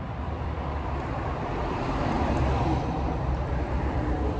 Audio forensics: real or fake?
fake